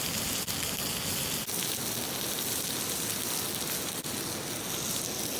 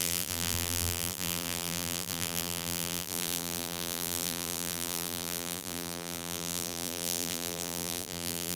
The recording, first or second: first